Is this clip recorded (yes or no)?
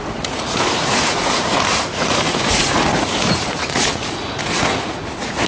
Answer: no